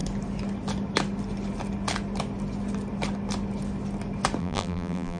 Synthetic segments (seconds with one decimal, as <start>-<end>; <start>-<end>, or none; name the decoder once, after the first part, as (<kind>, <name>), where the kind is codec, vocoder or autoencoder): 4.4-5.2 (vocoder, BigVGAN v2)